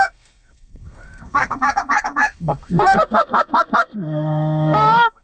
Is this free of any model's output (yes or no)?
no